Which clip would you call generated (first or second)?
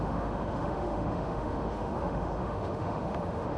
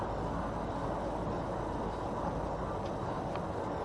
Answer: first